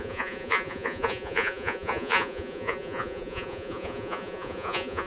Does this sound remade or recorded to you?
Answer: remade